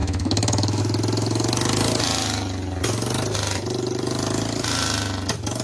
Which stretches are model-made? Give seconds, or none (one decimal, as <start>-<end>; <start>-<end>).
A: 0.0-0.8